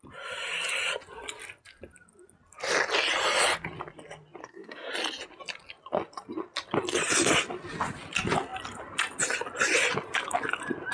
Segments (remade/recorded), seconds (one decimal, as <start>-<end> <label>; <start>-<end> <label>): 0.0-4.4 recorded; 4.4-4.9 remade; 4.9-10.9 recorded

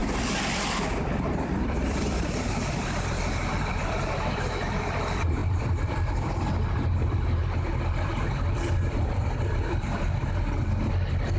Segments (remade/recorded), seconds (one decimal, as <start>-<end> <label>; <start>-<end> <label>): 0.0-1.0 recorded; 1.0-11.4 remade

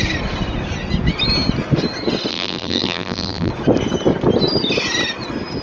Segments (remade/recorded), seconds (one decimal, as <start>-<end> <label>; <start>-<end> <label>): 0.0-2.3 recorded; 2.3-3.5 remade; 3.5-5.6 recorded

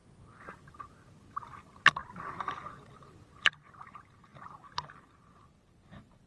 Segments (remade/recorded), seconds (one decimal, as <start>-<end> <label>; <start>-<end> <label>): 0.0-6.3 recorded

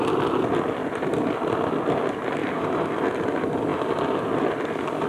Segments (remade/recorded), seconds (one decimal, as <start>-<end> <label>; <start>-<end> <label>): 0.0-0.8 recorded; 0.8-1.3 remade; 1.3-2.4 recorded; 2.4-3.0 remade; 3.0-5.1 recorded